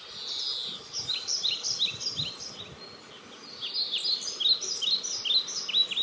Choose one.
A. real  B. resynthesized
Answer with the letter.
A